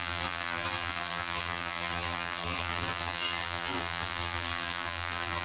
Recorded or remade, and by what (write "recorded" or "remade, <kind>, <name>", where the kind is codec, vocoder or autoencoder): remade, vocoder, BigVGAN v2